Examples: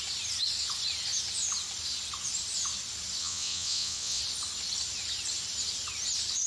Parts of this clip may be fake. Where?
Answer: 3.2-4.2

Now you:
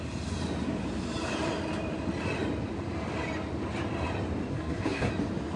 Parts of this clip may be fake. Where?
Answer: 4.5-5.1

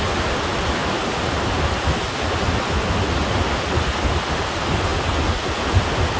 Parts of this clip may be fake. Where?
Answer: 0.8-1.5

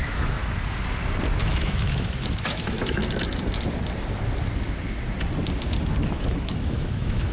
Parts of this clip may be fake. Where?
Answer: 0.0-0.4; 1.4-3.0; 6.0-7.3